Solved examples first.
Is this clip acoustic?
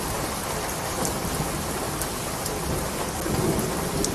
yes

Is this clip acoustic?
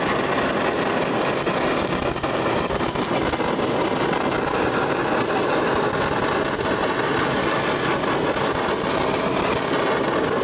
yes